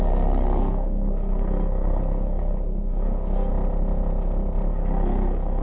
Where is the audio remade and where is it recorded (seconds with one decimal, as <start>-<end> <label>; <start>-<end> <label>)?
0.0-3.5 remade; 3.5-4.7 recorded; 4.7-5.6 remade